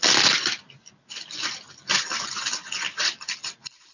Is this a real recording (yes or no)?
yes